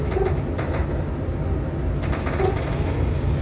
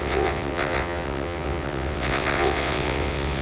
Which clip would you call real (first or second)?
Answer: first